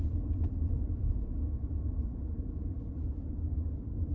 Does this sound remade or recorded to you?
remade